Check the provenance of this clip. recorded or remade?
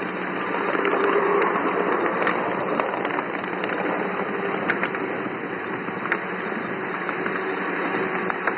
recorded